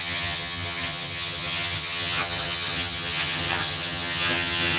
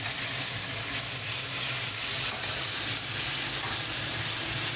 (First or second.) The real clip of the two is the second